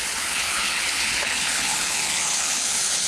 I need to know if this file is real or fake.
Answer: fake